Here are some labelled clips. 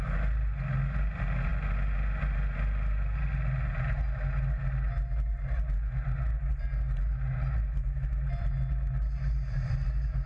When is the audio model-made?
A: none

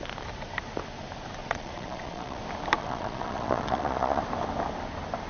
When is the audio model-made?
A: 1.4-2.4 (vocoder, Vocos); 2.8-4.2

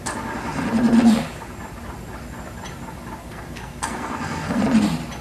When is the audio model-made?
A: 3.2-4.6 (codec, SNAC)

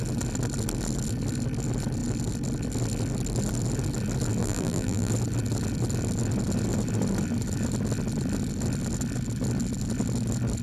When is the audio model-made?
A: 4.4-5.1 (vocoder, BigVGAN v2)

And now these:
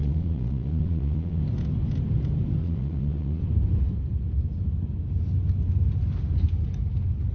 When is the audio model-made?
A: 0.0-1.4 (vocoder, Vocos); 2.6-3.4